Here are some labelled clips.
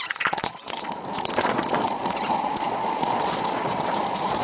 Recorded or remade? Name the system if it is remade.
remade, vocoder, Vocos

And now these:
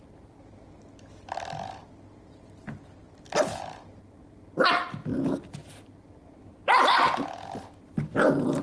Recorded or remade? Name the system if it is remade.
recorded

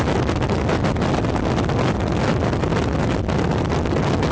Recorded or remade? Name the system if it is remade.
recorded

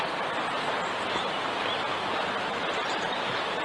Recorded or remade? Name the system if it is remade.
recorded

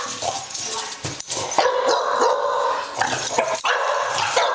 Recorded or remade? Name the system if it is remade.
recorded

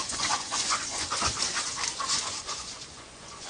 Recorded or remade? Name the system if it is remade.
remade, vocoder, Vocos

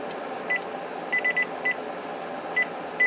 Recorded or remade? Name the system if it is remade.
recorded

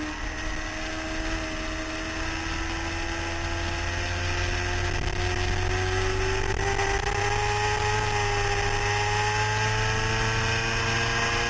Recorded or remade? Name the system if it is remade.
recorded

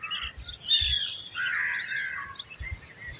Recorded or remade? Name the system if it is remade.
recorded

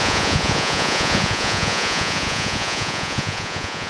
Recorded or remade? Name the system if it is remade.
remade, vocoder, Vocos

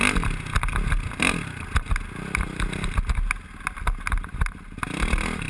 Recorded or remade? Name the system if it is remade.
recorded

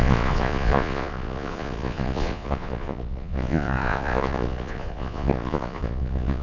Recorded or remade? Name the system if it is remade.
remade, vocoder, Vocos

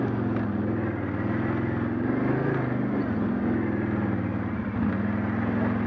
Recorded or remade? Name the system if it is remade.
recorded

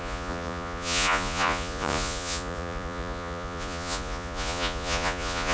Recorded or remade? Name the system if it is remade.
remade, vocoder, Vocos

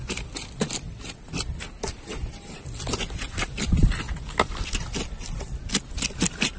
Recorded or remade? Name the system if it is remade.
recorded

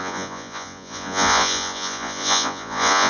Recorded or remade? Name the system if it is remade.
remade, vocoder, Vocos